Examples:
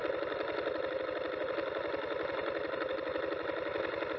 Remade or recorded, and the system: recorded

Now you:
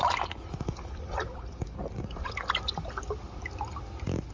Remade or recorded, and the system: recorded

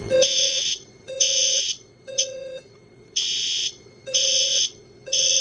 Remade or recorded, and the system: remade, vocoder, WaveNeXt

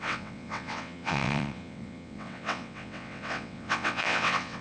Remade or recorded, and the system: remade, vocoder, WaveNeXt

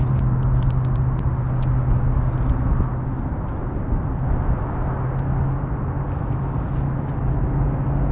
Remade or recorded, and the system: recorded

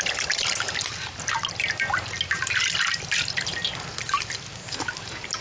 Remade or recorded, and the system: recorded